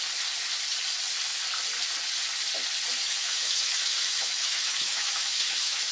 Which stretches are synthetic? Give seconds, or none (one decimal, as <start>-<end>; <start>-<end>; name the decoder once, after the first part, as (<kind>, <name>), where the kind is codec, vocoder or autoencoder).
3.0-5.9 (autoencoder, DAC-VAE)